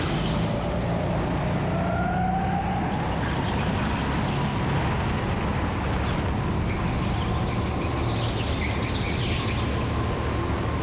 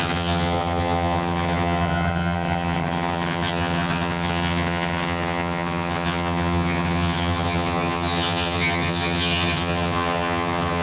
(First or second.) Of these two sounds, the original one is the first